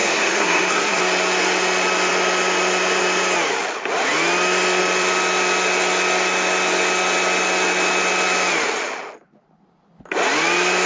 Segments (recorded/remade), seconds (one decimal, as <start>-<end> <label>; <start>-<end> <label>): 0.0-1.0 remade; 1.0-10.9 recorded